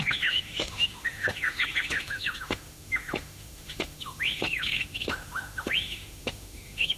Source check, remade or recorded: remade